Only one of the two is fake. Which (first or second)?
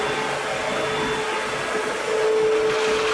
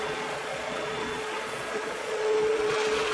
second